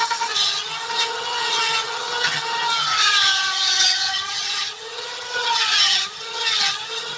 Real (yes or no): no